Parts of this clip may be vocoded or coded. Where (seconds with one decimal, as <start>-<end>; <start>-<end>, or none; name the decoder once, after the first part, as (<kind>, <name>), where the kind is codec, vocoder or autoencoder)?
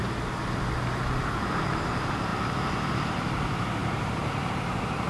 1.2-5.1 (vocoder, BigVGAN v2)